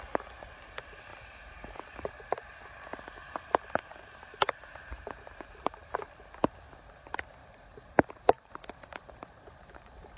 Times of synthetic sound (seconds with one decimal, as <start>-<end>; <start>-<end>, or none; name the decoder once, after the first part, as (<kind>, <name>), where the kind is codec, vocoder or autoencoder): 1.1-2.1 (vocoder, BigVGAN v2); 7.4-10.2